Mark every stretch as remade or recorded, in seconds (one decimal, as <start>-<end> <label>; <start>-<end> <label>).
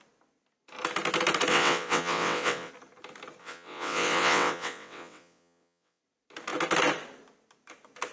0.0-1.5 recorded; 1.5-2.7 remade; 2.7-3.4 recorded; 3.4-6.0 remade; 6.0-8.1 recorded